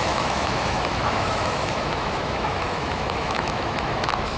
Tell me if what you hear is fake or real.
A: fake